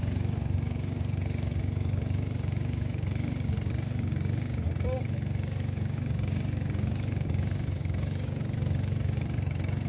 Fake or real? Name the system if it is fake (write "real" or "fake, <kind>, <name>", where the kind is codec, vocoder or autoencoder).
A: fake, codec, DAC